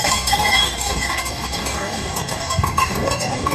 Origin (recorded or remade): remade